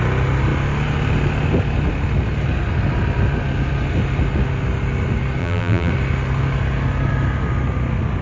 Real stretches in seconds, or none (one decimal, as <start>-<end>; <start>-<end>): 0.0-5.4; 5.9-8.2